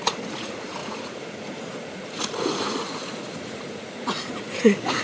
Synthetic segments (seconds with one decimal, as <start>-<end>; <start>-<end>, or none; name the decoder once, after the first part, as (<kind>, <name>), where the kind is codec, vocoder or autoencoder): 0.0-5.0 (vocoder, Vocos)